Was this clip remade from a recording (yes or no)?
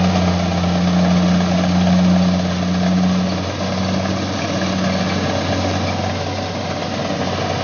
no